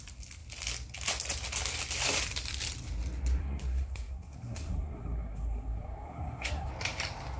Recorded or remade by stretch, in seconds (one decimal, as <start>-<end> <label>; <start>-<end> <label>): 0.0-3.4 recorded; 3.4-6.7 remade; 6.7-7.4 recorded